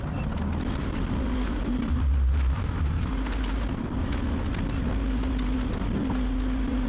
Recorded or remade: recorded